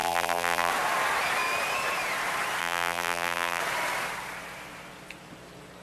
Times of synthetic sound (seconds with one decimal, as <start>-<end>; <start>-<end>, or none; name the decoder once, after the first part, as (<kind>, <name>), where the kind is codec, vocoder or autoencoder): 0.0-0.7 (vocoder, BigVGAN v2); 2.6-3.6